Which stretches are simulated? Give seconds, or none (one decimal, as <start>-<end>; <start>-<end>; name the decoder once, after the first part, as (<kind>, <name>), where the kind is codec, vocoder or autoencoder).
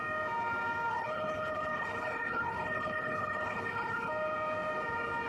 0.9-4.1 (codec, HILCodec)